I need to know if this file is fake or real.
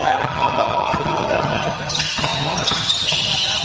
fake